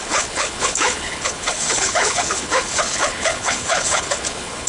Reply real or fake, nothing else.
fake